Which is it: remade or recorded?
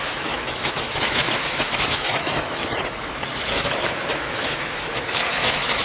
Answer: remade